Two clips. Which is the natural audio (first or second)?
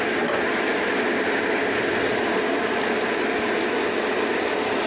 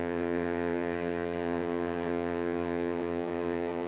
first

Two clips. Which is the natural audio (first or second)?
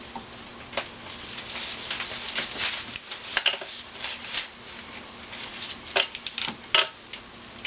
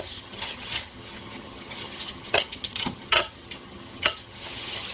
first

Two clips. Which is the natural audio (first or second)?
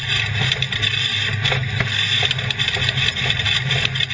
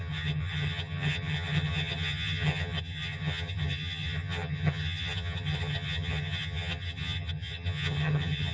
first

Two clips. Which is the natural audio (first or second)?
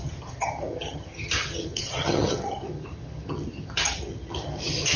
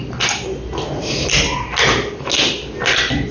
second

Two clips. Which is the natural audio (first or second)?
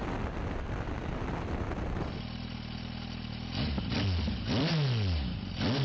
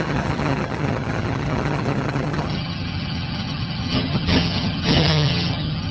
first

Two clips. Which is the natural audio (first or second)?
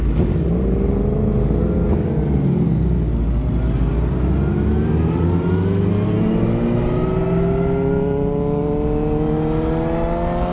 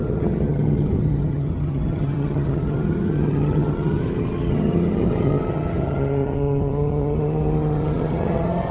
first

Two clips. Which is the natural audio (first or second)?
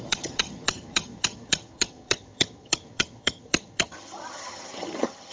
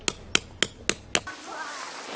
second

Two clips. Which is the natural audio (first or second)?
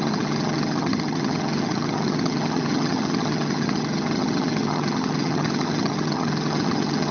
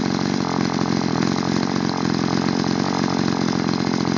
second